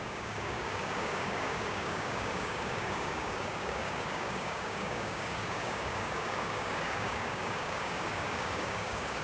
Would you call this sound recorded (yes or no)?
no